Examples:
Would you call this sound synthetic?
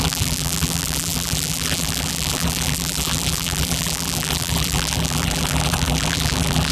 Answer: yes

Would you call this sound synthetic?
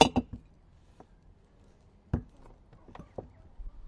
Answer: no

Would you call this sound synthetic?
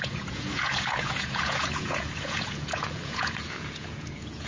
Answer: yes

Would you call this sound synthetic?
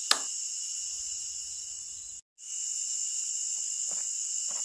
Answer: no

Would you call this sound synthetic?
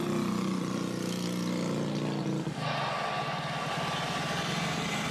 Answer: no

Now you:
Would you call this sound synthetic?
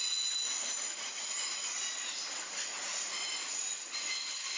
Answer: no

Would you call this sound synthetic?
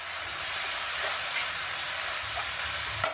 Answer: no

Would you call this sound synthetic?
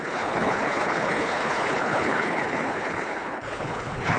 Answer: yes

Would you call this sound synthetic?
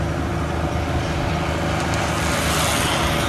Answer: no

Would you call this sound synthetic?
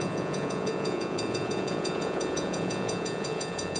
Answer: yes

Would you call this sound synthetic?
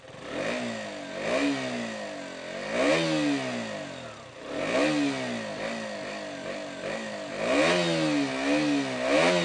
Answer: no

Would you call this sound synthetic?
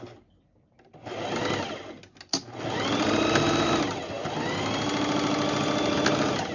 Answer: no